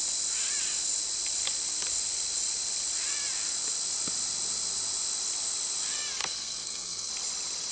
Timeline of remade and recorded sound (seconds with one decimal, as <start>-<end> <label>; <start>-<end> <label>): 0.0-6.2 recorded; 6.2-7.1 remade; 7.1-7.7 recorded